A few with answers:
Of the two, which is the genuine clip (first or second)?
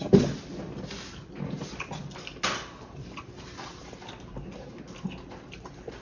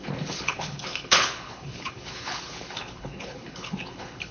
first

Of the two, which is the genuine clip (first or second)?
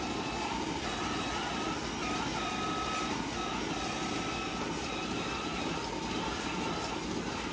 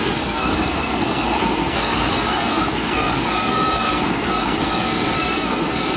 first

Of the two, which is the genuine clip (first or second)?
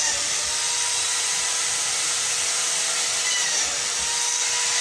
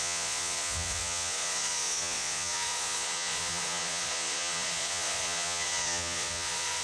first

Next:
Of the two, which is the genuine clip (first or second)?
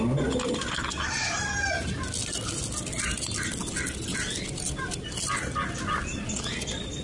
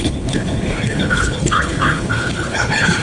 first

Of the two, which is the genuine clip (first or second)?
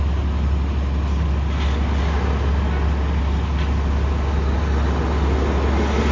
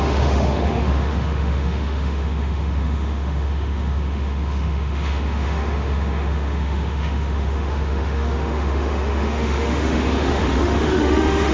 first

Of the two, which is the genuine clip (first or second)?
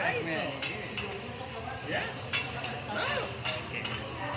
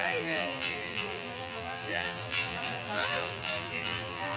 first